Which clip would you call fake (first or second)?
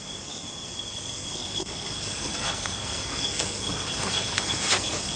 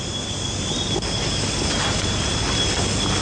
first